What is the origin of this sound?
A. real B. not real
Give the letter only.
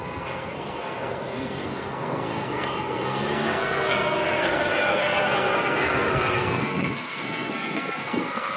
B